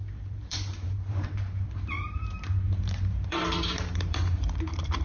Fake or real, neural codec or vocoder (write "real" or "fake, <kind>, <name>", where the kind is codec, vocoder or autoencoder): fake, vocoder, BigVGAN v2